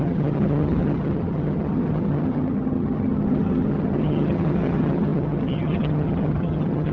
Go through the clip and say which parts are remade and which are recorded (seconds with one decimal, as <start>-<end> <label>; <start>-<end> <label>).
0.0-6.9 remade